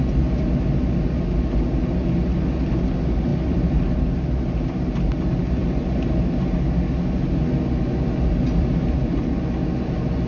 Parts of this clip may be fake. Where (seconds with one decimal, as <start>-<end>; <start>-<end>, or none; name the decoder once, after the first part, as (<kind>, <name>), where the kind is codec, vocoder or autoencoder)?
none